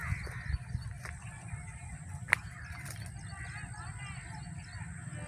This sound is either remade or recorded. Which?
recorded